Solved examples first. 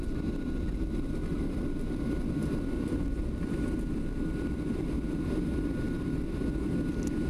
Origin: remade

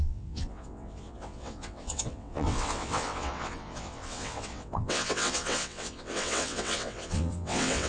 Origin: remade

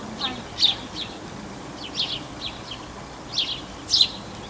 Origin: recorded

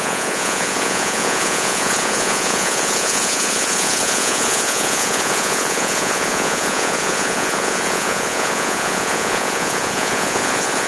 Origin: remade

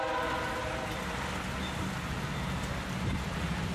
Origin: recorded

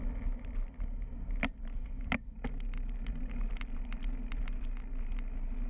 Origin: recorded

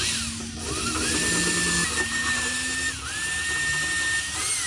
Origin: recorded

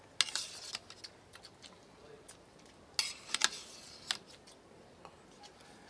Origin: recorded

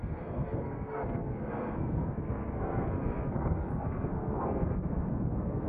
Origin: remade